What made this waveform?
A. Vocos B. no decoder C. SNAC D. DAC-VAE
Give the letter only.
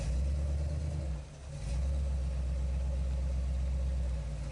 B